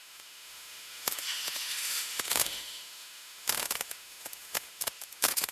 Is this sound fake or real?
fake